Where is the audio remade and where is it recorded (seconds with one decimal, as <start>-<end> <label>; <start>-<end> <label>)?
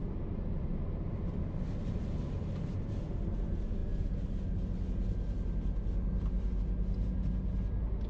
0.0-8.1 recorded